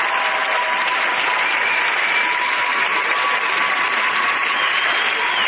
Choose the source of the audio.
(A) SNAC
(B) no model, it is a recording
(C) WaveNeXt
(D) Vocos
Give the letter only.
B